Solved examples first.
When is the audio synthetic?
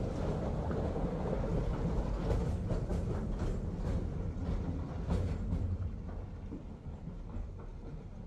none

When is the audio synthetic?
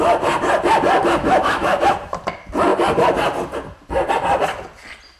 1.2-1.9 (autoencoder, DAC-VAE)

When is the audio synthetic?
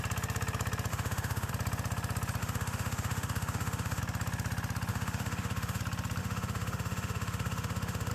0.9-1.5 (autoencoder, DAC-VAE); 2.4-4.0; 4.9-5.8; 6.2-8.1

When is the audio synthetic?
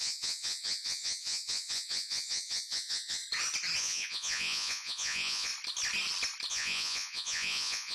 0.0-3.2 (vocoder, Vocos); 3.8-5.5; 6.5-7.9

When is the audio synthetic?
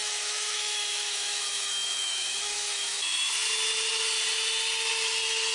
0.0-3.3 (autoencoder, DAC-VAE)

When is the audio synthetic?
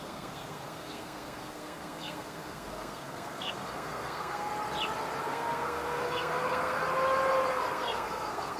0.0-4.5 (codec, SNAC); 5.2-6.8; 7.5-8.6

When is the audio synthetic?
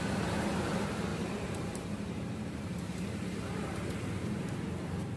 0.0-5.2 (vocoder, BigVGAN v2)